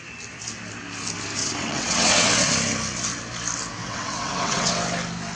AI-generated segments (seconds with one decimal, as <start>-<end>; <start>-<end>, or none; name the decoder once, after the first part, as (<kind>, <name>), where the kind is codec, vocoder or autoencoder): 1.4-2.5 (vocoder, WaveNeXt); 3.8-4.7